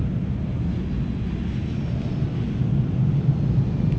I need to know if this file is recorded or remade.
recorded